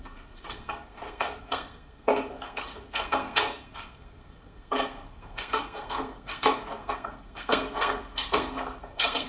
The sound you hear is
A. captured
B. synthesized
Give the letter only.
B